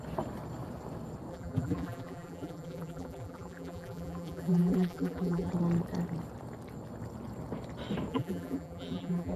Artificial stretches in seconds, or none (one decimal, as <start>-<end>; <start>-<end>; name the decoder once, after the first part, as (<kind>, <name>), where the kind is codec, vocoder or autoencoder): 1.3-5.5 (vocoder, BigVGAN v2); 8.1-9.4